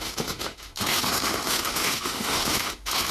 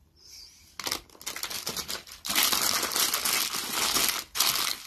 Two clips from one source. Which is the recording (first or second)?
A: second